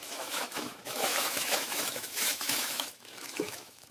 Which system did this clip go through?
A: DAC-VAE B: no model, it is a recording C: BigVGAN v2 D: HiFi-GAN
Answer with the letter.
A